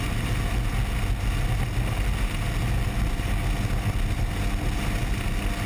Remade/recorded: recorded